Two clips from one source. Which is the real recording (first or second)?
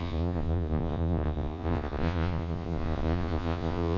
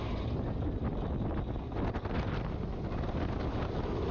second